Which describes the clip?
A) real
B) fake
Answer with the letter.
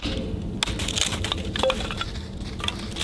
A